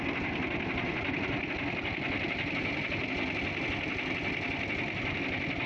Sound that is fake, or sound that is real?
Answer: real